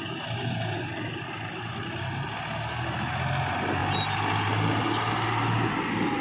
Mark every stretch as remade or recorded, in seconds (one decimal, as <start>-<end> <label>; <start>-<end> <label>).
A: 0.0-6.2 recorded